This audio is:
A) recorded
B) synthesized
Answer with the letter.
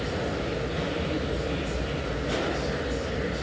A